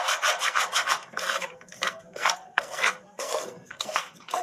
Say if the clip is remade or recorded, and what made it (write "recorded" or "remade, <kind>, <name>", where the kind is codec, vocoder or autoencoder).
remade, codec, SNAC